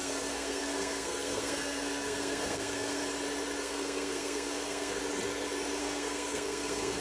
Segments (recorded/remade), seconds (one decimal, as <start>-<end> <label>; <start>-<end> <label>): 0.0-3.0 remade; 3.0-3.6 recorded; 3.6-5.0 remade; 5.0-5.8 recorded; 5.8-7.0 remade